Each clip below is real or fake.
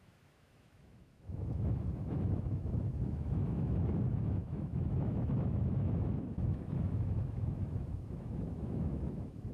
fake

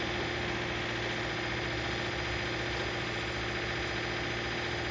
real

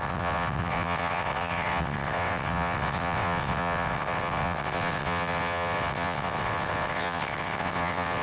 fake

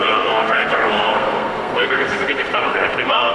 fake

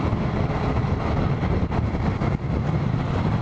real